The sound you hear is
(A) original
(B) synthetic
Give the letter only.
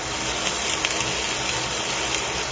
A